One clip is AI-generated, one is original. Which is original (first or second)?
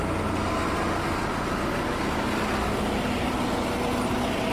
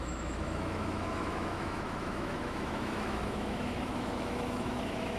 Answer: first